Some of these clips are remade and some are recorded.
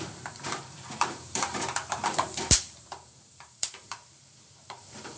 remade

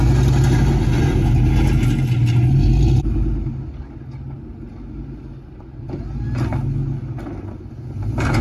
recorded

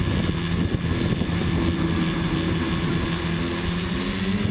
recorded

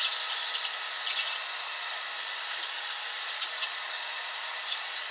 recorded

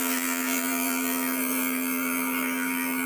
remade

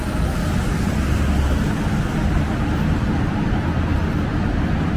recorded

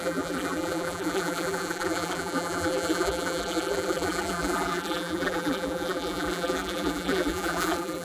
remade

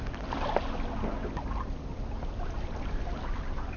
recorded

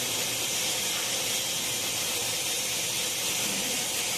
recorded